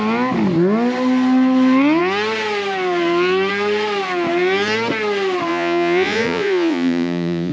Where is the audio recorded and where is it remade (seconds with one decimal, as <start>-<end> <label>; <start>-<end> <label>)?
0.0-5.5 recorded; 5.5-7.5 remade